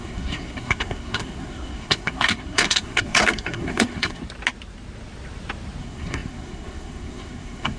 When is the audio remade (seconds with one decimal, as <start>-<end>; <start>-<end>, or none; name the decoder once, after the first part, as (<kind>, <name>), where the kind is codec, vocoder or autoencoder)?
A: 0.0-4.2 (codec, SNAC); 5.8-7.8